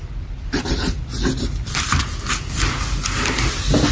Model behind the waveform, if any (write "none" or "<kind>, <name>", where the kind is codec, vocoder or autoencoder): none